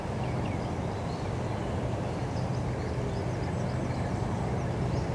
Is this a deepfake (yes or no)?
no